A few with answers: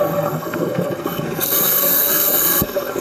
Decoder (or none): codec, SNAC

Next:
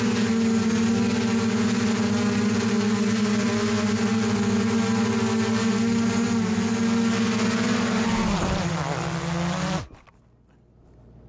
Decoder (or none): none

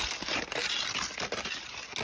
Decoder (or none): none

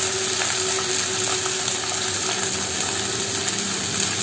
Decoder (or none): none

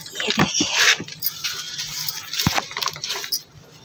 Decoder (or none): none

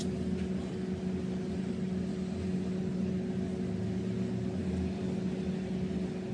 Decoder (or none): none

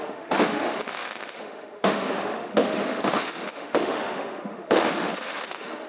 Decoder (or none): autoencoder, DAC-VAE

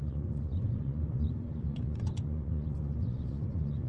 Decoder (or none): vocoder, Vocos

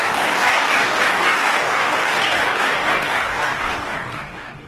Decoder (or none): codec, DAC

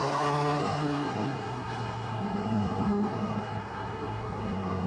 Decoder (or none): codec, SNAC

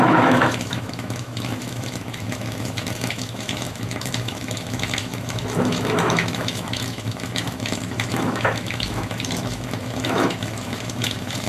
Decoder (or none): autoencoder, DAC-VAE